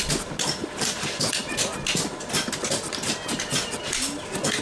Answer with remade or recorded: recorded